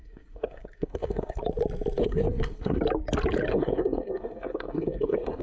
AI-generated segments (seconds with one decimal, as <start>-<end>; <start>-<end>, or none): 0.0-1.4; 2.0-2.8; 3.5-5.4